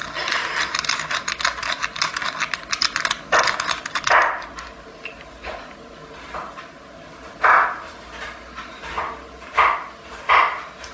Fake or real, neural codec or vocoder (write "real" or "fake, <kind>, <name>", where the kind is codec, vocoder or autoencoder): real